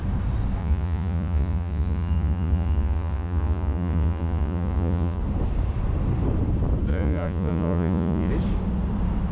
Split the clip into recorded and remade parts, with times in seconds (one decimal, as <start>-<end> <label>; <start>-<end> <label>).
0.0-0.6 recorded; 0.6-5.2 remade; 5.2-6.9 recorded; 6.9-8.3 remade; 8.3-9.3 recorded